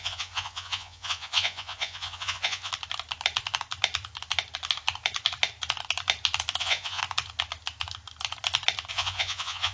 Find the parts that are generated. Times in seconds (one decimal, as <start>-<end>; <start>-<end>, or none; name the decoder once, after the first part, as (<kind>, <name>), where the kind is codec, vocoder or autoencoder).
0.0-2.7 (vocoder, Vocos); 6.6-7.0; 8.9-9.7